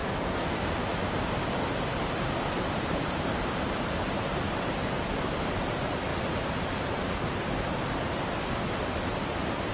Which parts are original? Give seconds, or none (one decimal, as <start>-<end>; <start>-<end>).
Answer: 6.1-9.7